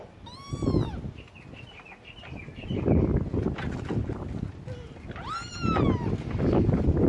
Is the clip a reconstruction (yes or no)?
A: no